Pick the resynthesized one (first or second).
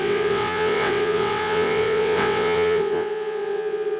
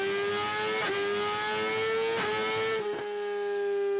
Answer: first